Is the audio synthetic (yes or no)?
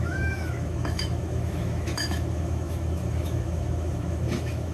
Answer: yes